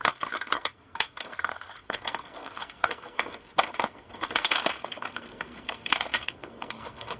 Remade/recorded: remade